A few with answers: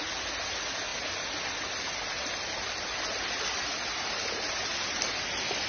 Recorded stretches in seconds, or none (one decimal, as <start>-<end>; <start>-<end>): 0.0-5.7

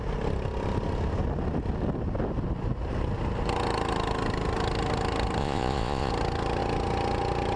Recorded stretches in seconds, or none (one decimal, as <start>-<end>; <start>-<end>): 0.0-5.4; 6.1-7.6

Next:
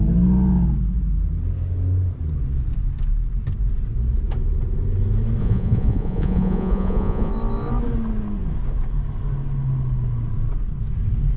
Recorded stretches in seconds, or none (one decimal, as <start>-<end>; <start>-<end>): 0.0-5.4; 7.3-11.4

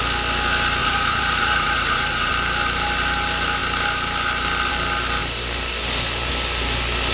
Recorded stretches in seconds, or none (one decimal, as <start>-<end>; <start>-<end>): 0.0-0.8; 2.3-7.1

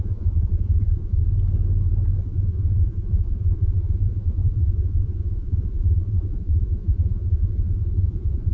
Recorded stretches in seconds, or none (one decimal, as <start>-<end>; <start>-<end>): 1.2-2.2

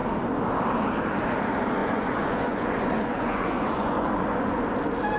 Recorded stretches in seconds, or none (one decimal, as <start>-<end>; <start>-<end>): 0.0-1.8; 4.6-5.2

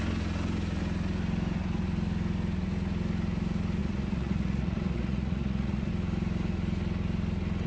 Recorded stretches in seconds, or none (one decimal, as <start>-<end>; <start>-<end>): 0.0-3.8; 5.9-7.7